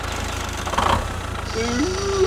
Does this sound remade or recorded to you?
recorded